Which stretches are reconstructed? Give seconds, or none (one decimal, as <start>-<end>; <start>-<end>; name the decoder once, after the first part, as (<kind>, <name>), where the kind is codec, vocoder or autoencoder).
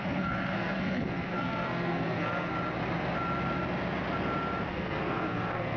0.0-2.5 (codec, SNAC); 4.7-5.8